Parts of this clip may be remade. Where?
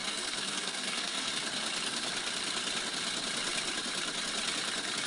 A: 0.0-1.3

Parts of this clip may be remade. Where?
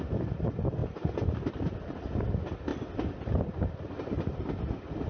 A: none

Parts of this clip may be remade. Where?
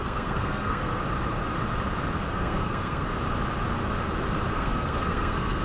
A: 0.0-1.0; 2.3-3.1; 4.5-5.6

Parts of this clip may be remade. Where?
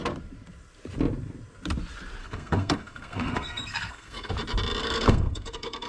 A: 2.2-4.3; 4.8-5.9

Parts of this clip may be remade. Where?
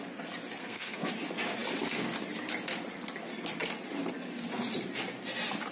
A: 0.6-1.1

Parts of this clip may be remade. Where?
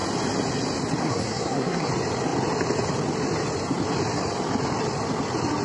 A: 1.0-1.9